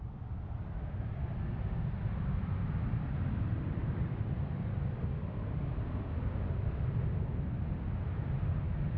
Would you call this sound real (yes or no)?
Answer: yes